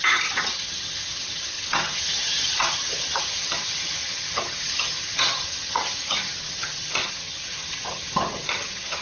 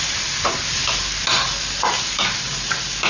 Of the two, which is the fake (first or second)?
first